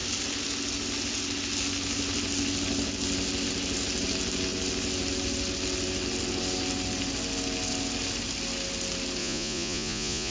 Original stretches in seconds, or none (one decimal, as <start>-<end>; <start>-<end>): 0.0-9.2